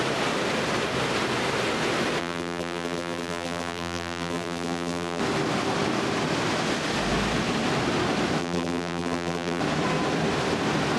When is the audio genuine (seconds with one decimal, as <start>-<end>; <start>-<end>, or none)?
0.0-2.2; 5.2-8.4; 9.6-11.0